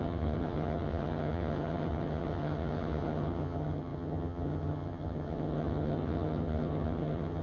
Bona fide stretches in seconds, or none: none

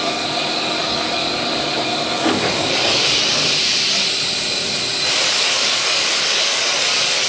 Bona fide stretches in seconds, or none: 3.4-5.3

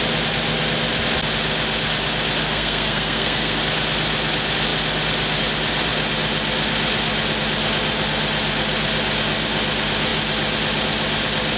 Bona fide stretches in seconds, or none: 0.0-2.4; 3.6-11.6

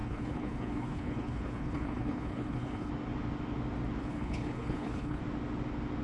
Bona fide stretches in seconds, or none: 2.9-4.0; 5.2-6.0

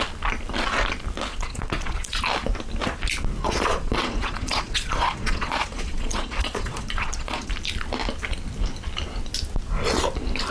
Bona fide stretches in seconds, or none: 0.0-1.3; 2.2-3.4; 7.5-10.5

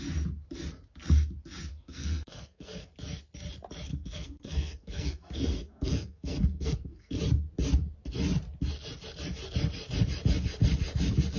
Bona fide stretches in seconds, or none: 0.0-1.7; 2.9-3.9; 7.2-11.4

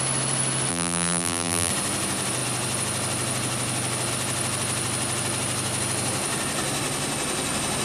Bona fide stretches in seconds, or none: 0.0-0.7; 1.7-7.8

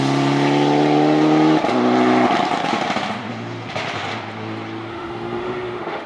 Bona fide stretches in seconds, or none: 0.0-4.9